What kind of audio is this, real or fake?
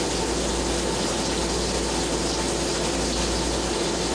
real